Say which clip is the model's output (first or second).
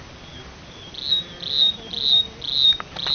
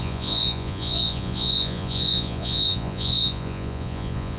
second